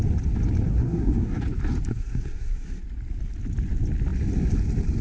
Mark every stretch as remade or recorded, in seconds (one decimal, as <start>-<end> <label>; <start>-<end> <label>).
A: 0.0-0.7 recorded; 0.7-1.4 remade; 1.4-1.9 recorded; 1.9-2.8 remade; 2.8-5.0 recorded